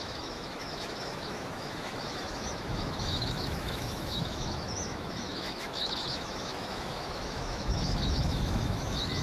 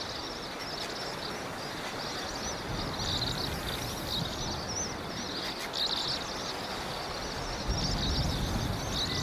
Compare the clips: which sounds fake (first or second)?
first